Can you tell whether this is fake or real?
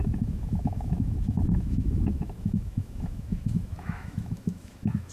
fake